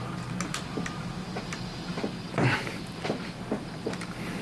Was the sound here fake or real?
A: real